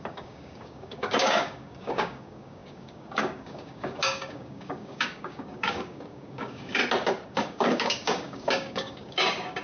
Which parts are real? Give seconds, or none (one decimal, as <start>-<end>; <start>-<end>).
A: 6.8-7.3